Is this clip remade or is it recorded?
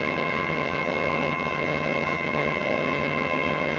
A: remade